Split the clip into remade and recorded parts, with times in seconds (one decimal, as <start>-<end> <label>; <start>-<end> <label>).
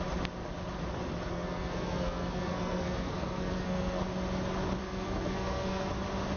0.0-1.3 recorded; 1.3-4.0 remade; 4.0-4.8 recorded; 4.8-5.9 remade; 5.9-6.4 recorded